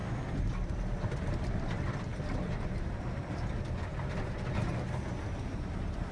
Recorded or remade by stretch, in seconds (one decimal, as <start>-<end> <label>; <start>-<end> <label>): 0.0-3.9 remade; 3.9-4.9 recorded; 4.9-6.1 remade